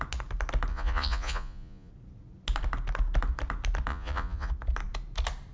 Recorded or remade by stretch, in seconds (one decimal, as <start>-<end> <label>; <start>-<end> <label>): 0.0-0.7 recorded; 0.7-1.9 remade; 1.9-3.9 recorded; 3.9-4.5 remade; 4.5-5.5 recorded